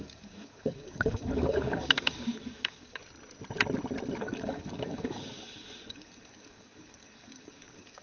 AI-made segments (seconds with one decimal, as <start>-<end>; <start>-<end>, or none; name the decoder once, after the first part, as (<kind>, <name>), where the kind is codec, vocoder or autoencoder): 0.0-3.0 (codec, DAC); 4.2-8.0